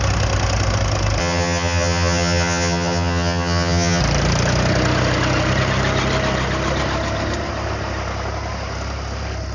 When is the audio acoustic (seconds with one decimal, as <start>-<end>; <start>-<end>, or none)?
0.0-1.2; 4.0-9.5